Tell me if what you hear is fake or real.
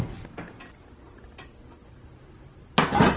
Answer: real